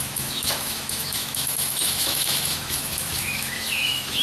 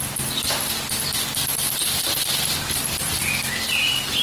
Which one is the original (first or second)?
second